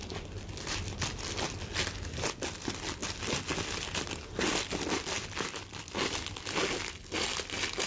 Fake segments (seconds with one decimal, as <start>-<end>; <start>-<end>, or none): none